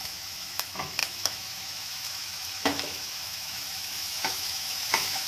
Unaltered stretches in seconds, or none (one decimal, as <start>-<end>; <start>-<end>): none